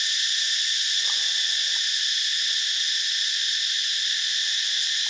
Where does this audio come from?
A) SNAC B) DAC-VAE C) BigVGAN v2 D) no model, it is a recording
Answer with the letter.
D